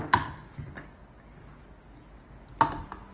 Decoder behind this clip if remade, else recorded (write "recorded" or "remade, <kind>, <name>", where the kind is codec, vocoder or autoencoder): recorded